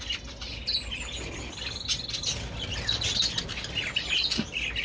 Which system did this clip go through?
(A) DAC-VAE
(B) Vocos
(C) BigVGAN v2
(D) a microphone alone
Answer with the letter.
D